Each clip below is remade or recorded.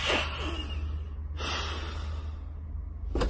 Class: recorded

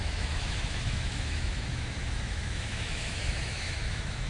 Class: remade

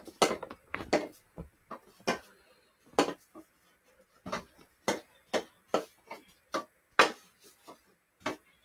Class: recorded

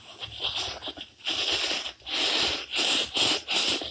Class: recorded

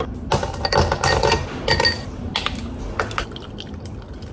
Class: recorded